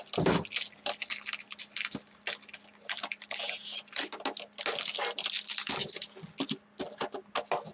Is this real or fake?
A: real